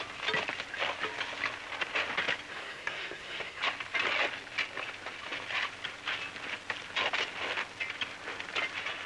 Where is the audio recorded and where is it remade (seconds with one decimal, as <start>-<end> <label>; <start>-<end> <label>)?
0.0-2.5 recorded; 2.5-3.6 remade; 3.6-9.1 recorded

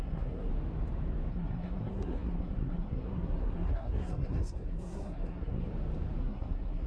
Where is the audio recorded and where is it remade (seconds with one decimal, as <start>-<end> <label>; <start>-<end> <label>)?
0.0-0.5 remade; 0.5-1.3 recorded; 1.3-5.7 remade; 5.7-6.2 recorded; 6.2-6.9 remade